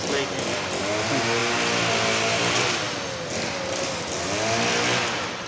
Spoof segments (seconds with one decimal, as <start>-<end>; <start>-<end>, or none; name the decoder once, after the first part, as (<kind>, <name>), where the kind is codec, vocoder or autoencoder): none